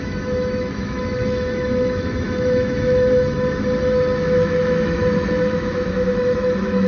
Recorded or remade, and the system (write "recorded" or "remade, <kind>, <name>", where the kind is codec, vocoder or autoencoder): remade, autoencoder, DAC-VAE